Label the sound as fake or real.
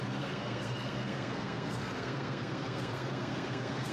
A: fake